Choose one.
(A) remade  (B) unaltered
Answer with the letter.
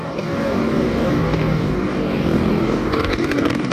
A